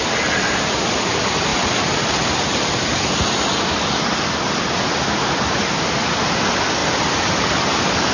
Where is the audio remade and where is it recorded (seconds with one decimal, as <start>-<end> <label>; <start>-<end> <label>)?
0.0-8.1 recorded